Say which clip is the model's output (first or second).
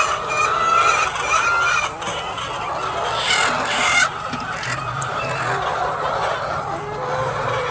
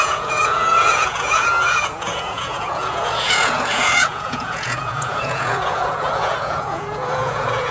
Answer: second